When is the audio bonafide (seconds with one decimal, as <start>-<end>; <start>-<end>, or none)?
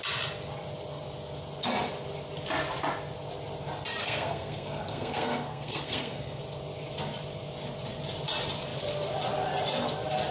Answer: 0.0-4.0; 6.4-10.3